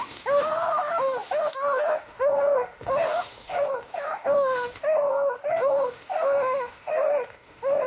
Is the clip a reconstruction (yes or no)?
yes